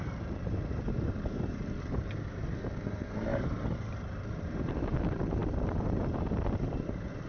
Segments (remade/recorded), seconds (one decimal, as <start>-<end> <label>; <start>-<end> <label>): 0.0-7.3 remade